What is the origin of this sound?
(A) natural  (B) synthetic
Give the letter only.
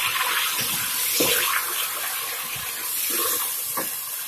A